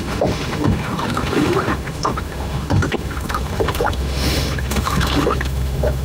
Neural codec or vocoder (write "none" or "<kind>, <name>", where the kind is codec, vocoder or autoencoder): autoencoder, DAC-VAE